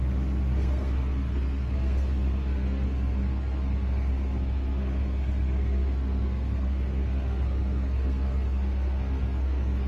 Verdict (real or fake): fake